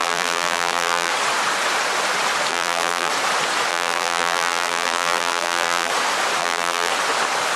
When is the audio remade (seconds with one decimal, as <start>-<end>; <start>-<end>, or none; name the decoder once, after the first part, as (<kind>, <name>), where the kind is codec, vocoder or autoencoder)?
0.0-1.1 (vocoder, BigVGAN v2); 2.5-3.1; 3.7-5.9; 6.4-6.9